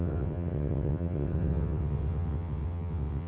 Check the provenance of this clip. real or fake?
fake